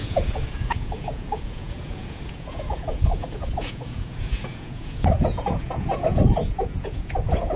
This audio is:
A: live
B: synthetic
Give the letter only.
B